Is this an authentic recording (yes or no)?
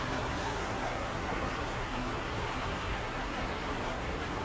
no